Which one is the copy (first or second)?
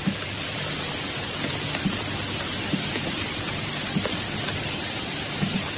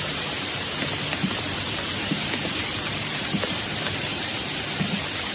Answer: second